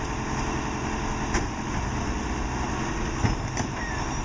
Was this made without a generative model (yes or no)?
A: yes